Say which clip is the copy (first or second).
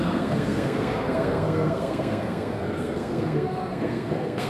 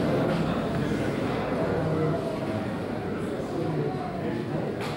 first